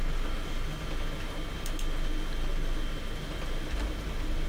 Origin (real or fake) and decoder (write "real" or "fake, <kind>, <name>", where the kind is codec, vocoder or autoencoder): real